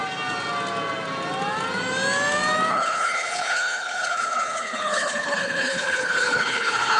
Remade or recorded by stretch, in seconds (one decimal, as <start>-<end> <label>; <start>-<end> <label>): 0.0-2.7 recorded; 2.7-7.0 remade

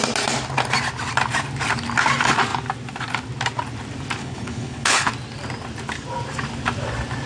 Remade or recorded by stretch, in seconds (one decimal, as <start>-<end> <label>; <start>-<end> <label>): 0.0-4.2 recorded; 4.2-5.1 remade; 5.1-7.3 recorded

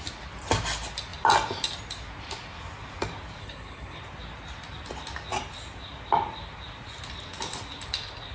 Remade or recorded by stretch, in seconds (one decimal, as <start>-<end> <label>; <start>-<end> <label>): 0.0-3.4 recorded; 3.4-4.0 remade; 4.0-8.3 recorded

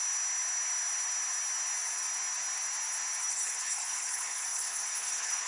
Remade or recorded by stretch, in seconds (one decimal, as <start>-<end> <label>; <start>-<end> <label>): 0.0-3.2 recorded; 3.2-5.5 remade